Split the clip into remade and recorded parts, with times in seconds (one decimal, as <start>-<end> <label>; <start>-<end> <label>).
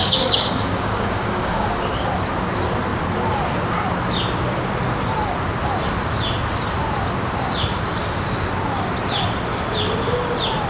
0.0-1.9 remade; 1.9-10.7 recorded